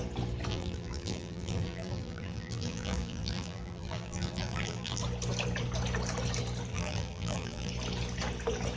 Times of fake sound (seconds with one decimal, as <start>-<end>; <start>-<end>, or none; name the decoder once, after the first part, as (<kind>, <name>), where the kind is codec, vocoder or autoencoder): 0.5-5.0 (vocoder, BigVGAN v2); 6.7-7.7